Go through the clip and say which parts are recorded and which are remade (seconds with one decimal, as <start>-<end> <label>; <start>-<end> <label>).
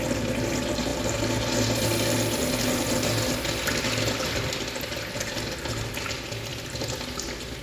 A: 0.0-7.6 recorded